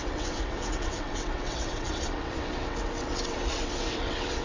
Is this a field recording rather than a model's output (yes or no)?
no